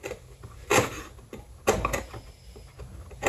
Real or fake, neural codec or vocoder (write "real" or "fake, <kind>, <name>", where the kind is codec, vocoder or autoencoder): real